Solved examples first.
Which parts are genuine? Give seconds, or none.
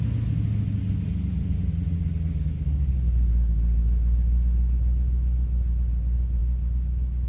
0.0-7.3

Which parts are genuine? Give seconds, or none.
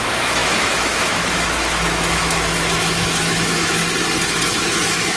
3.8-4.3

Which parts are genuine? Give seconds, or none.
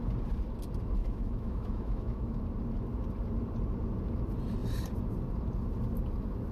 0.0-1.0; 2.4-6.5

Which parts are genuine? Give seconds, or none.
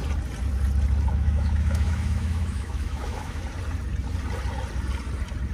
0.0-1.1; 3.4-5.5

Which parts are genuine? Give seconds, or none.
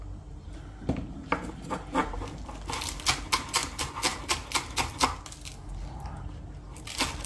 0.0-7.3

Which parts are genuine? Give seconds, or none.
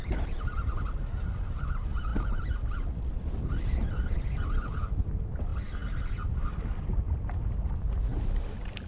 0.0-8.9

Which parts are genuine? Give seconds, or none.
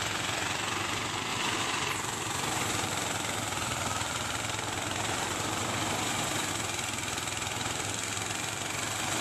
0.0-1.3; 6.5-9.2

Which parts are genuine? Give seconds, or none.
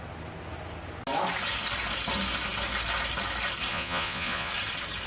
0.0-3.7; 4.5-5.1